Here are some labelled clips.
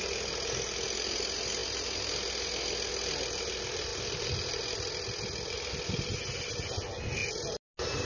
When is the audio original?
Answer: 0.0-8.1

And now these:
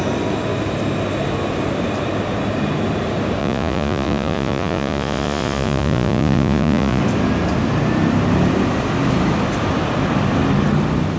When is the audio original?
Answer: 0.0-3.4; 7.0-11.2

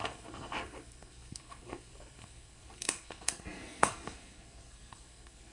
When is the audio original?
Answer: none